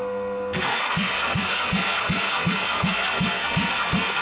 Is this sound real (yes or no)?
no